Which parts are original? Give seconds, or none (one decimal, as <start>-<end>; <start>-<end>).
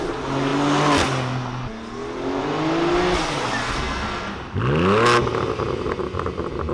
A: 0.0-3.6; 4.3-6.7